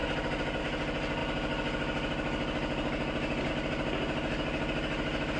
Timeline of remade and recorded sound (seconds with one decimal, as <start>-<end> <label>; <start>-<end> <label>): 0.0-0.6 remade; 0.6-1.2 recorded; 1.2-3.5 remade; 3.5-5.4 recorded